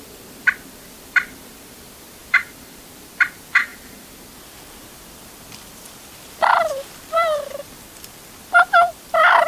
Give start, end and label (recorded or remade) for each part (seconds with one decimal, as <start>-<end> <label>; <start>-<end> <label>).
0.0-9.5 remade